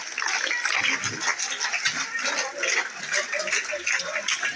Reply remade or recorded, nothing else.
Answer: recorded